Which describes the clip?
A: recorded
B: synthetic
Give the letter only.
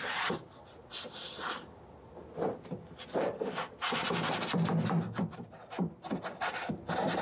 A